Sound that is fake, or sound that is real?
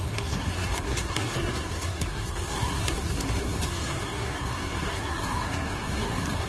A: fake